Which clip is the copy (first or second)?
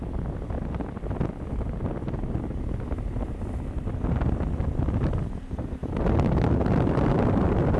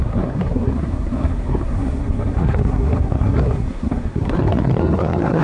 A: second